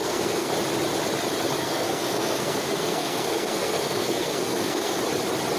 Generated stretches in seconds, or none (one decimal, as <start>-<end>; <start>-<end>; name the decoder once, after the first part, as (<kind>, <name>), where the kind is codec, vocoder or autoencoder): 0.0-0.5 (codec, SNAC); 1.6-5.0